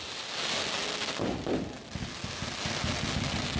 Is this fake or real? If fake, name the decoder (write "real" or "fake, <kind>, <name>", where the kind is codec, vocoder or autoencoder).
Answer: real